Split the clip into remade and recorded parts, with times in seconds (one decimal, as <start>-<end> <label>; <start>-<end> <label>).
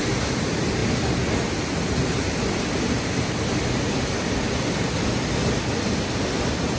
0.0-6.8 recorded